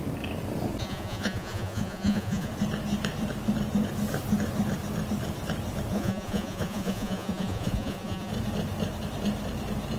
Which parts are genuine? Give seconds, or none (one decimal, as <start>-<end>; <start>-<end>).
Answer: 0.0-0.8; 2.5-5.9; 8.3-10.0